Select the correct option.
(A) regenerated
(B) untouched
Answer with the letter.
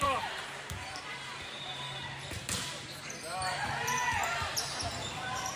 A